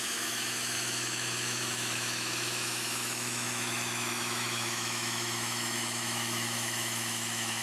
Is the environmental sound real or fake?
fake